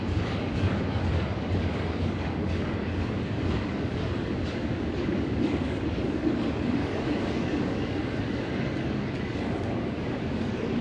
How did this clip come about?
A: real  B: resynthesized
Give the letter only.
B